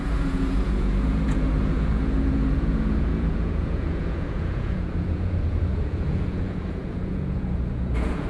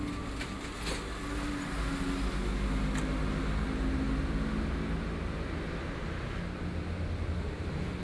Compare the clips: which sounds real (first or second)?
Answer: second